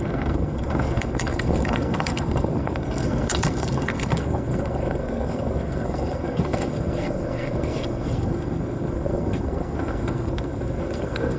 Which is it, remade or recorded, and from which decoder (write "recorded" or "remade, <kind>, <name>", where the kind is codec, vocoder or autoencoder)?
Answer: remade, codec, SNAC